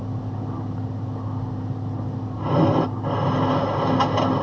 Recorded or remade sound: recorded